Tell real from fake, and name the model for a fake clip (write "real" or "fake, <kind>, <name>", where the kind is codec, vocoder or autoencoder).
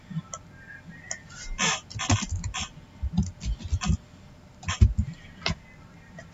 real